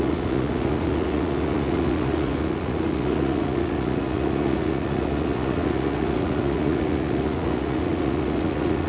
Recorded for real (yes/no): no